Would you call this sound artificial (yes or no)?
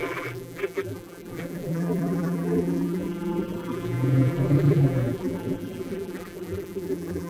yes